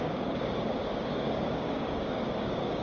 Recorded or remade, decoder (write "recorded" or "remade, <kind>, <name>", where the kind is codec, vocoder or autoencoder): remade, codec, DAC